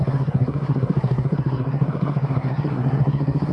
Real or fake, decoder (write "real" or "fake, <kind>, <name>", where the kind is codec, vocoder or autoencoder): fake, codec, SNAC